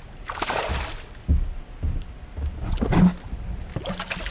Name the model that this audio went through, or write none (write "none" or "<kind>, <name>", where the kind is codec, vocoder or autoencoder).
none